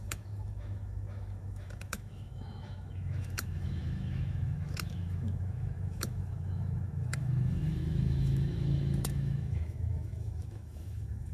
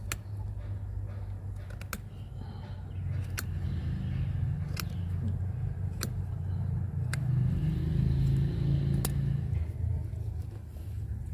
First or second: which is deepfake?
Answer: first